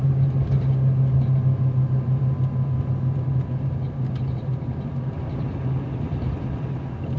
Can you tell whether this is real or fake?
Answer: real